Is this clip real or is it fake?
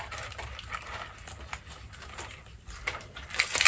real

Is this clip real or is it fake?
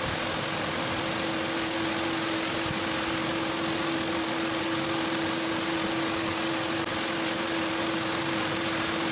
real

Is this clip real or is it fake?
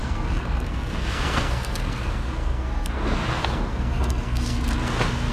fake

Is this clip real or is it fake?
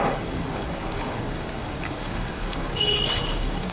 fake